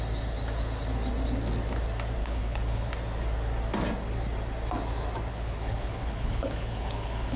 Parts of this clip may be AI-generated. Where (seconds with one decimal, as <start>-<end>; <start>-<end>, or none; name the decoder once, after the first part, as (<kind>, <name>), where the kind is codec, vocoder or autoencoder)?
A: 2.2-2.9 (codec, HILCodec); 5.3-7.4

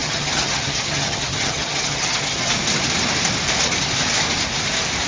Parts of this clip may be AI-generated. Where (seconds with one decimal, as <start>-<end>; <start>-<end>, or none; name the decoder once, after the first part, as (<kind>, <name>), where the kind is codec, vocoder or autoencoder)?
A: 0.0-2.5 (vocoder, HiFi-GAN)

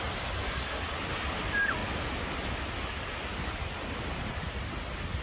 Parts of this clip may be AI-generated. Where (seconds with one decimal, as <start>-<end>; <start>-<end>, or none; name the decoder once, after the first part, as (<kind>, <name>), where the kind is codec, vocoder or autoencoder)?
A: none

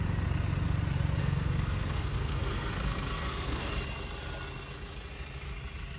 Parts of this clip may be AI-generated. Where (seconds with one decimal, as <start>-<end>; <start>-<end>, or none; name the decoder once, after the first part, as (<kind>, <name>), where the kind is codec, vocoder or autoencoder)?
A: 1.2-3.7 (codec, SNAC)

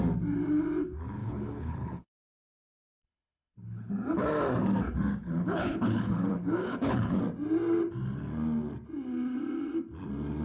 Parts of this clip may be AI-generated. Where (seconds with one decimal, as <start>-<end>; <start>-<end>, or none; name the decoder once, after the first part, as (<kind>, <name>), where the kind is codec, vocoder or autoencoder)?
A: 1.2-3.9 (codec, HILCodec); 5.2-7.2

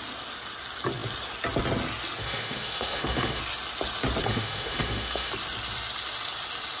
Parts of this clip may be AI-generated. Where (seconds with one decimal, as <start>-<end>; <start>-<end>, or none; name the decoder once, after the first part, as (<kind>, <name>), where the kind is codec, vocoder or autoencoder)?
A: 2.2-3.4 (autoencoder, DAC-VAE); 4.2-5.3

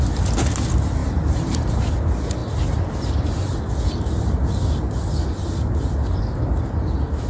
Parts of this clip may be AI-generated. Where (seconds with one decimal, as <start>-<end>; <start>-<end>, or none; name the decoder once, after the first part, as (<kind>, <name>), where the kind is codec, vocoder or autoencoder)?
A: 1.0-1.9 (vocoder, BigVGAN v2)